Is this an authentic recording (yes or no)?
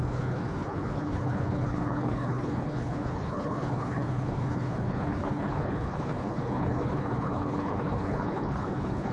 no